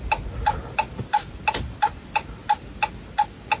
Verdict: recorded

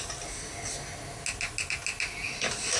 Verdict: recorded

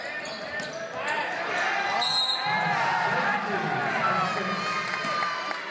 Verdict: remade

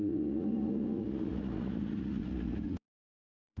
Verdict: remade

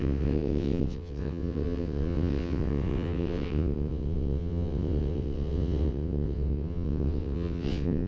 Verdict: remade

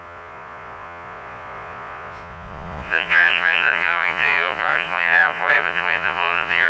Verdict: remade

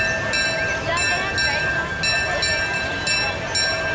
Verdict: recorded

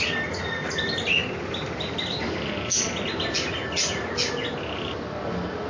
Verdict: recorded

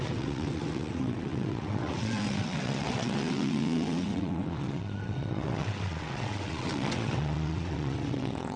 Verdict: remade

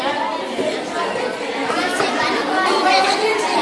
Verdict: recorded